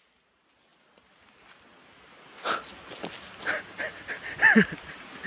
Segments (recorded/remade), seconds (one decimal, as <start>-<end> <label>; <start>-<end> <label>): 0.0-5.3 recorded